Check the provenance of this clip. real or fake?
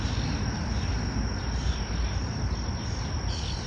real